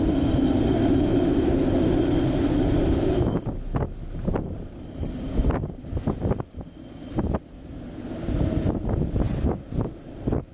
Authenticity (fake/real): real